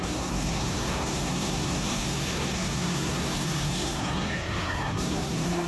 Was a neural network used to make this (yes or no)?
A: yes